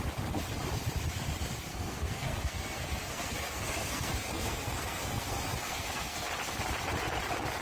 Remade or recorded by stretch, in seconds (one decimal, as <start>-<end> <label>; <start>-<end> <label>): 0.0-1.7 recorded; 1.7-6.3 remade; 6.3-7.6 recorded